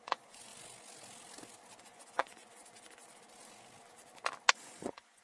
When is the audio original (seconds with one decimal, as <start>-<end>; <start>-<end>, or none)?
0.5-1.8; 2.4-4.5